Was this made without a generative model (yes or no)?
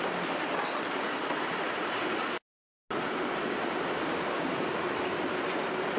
yes